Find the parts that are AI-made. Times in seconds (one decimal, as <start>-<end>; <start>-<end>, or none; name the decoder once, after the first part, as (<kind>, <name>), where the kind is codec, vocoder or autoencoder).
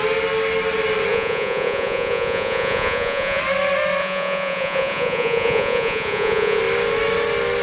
1.1-3.4 (vocoder, Vocos); 4.0-6.6